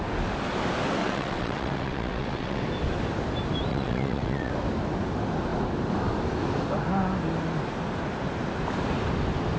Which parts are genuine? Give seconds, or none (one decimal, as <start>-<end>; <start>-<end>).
0.0-1.0; 2.6-3.7; 4.5-9.6